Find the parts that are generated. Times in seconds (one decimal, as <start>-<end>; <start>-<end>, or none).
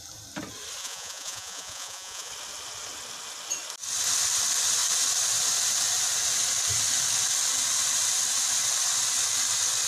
0.8-2.3